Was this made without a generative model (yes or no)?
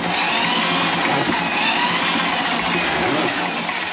yes